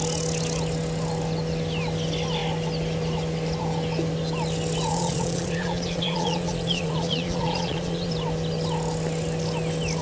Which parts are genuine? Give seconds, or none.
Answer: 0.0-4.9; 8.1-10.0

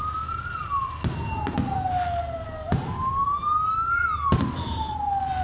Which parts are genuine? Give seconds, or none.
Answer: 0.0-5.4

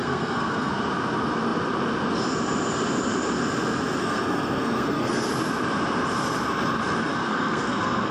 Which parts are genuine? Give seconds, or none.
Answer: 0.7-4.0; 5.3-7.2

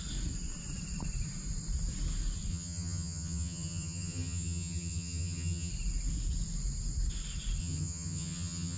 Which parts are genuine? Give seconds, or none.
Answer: 0.0-2.5; 5.7-7.6

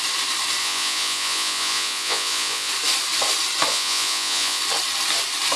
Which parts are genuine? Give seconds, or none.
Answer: 0.0-0.6; 2.7-3.7; 4.6-5.6